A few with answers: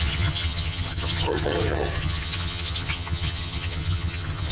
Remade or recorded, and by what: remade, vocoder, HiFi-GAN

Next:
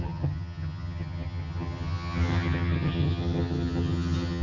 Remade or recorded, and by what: remade, vocoder, HiFi-GAN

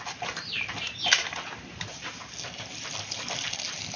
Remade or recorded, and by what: recorded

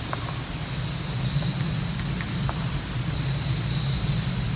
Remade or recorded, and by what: recorded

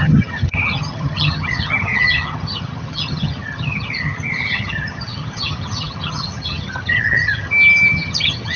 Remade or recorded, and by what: remade, vocoder, HiFi-GAN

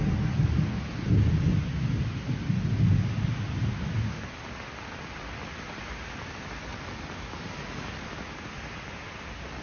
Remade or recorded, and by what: recorded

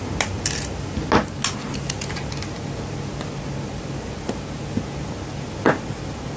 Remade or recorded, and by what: recorded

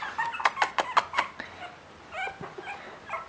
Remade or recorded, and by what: recorded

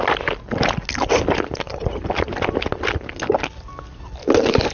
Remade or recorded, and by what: recorded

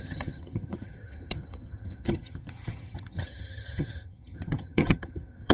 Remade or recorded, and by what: remade, vocoder, HiFi-GAN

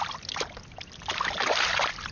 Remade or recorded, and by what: recorded